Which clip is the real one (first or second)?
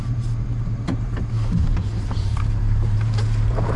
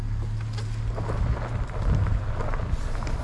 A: second